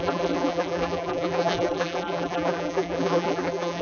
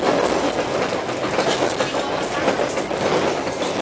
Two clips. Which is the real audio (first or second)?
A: second